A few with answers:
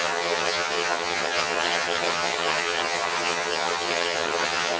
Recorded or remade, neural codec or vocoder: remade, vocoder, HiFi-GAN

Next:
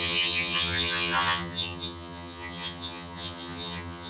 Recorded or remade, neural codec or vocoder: remade, vocoder, HiFi-GAN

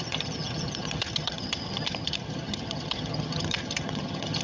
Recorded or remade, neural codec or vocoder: remade, vocoder, HiFi-GAN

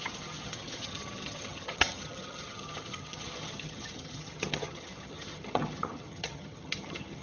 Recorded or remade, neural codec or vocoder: remade, vocoder, HiFi-GAN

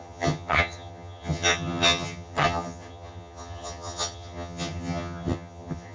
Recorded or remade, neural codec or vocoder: remade, vocoder, HiFi-GAN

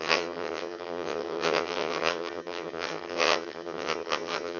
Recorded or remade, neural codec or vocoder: remade, vocoder, HiFi-GAN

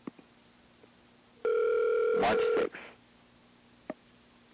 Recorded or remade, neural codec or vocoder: recorded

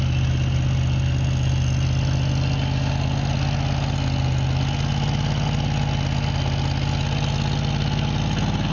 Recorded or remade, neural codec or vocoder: recorded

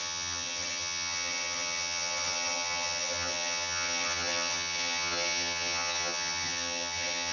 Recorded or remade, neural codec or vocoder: remade, vocoder, HiFi-GAN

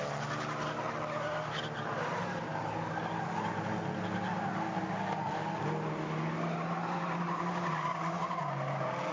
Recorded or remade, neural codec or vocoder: recorded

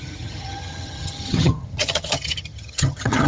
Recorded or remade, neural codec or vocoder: remade, vocoder, HiFi-GAN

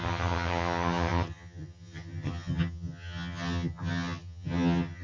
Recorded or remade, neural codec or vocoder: remade, vocoder, HiFi-GAN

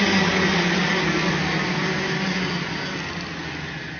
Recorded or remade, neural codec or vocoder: recorded